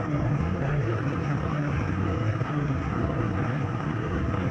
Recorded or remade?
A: remade